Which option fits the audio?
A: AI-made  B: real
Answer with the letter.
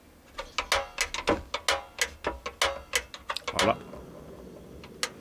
B